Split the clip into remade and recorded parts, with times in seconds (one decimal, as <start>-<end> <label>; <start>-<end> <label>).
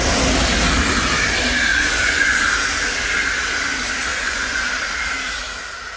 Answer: 0.0-1.7 recorded; 1.7-2.4 remade; 2.4-4.1 recorded; 4.1-4.7 remade; 4.7-6.0 recorded